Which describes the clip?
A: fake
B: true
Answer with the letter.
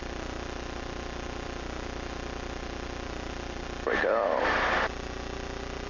B